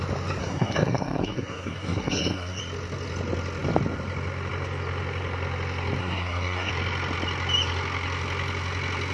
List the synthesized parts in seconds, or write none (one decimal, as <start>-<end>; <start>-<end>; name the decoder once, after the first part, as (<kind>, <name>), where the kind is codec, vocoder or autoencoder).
0.4-2.6 (codec, SNAC); 6.0-6.7